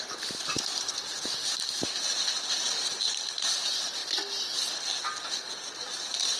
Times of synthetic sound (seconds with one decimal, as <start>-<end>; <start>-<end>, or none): 0.0-4.0; 5.9-6.4